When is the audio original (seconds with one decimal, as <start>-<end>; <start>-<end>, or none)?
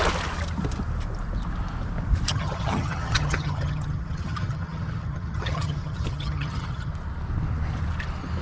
0.0-2.3; 6.9-8.4